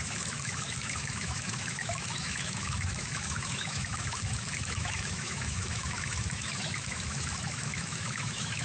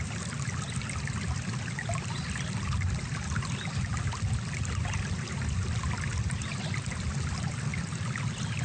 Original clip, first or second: second